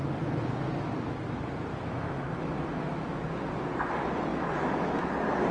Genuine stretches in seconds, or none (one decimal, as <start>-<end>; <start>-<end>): 0.0-1.7; 3.5-4.3; 5.1-5.5